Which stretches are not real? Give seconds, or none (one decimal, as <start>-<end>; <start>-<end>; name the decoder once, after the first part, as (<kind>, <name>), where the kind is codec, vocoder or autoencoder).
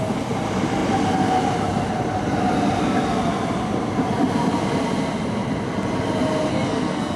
6.5-7.2 (codec, SNAC)